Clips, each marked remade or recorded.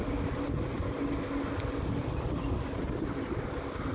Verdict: recorded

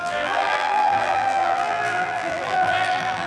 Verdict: remade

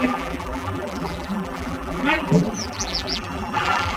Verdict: remade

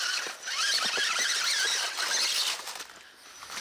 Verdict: recorded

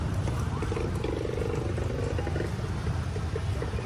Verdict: recorded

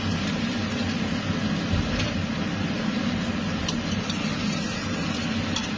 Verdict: recorded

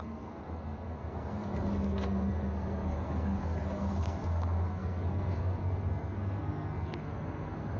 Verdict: remade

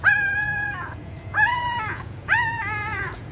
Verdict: remade